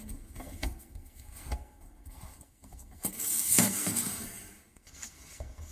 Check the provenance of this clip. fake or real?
fake